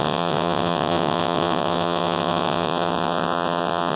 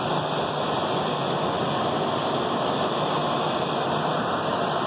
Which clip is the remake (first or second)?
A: first